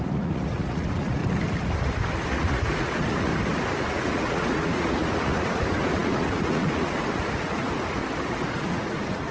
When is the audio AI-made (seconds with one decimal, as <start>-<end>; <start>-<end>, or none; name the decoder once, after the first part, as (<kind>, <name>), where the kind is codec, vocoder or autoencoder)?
0.0-1.2 (vocoder, Vocos); 2.3-3.3; 3.8-8.0; 8.5-9.3